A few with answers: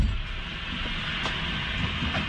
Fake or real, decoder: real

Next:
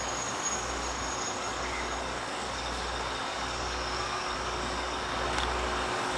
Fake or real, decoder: fake, codec, DAC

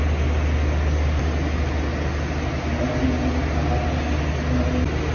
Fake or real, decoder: real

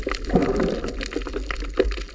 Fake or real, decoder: real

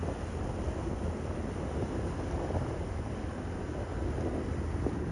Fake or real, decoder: real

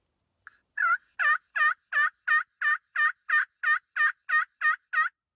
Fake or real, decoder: real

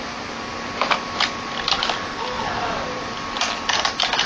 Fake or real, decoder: real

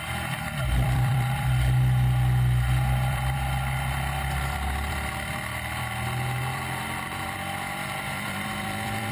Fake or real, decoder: fake, vocoder, BigVGAN v2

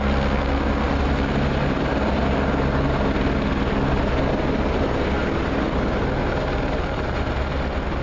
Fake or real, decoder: real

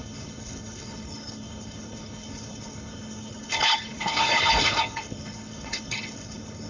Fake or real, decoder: fake, codec, HILCodec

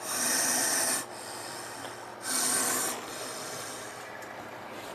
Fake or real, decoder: real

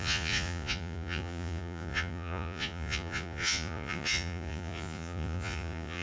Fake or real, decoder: fake, vocoder, Vocos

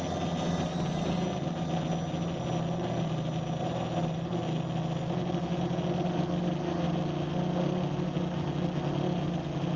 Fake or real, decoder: real